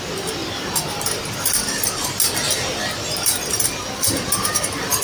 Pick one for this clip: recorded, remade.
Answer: recorded